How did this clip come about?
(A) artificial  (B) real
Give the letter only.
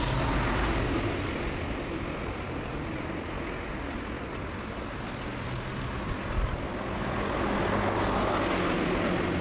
B